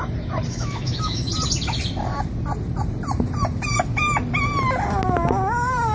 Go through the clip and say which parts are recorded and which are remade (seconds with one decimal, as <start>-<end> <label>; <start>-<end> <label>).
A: 0.0-0.5 recorded; 0.5-1.3 remade; 1.3-5.9 recorded